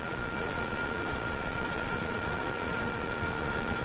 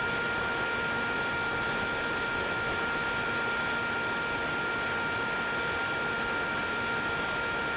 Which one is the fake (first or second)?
first